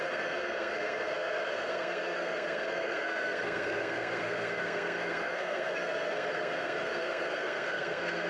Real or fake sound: fake